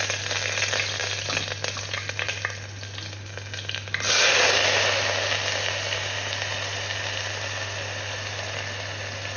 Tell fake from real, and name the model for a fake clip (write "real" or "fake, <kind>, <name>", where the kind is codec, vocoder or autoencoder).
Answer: real